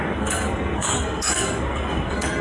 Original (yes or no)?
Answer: no